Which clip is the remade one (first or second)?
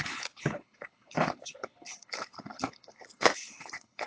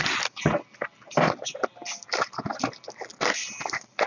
first